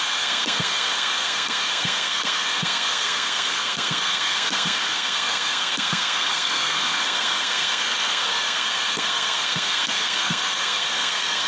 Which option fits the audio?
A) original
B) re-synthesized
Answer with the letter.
B